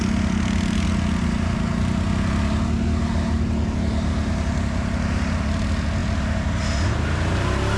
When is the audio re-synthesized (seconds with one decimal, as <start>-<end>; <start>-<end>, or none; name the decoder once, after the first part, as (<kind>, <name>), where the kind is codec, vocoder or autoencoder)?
none